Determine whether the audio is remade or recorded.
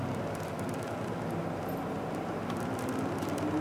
recorded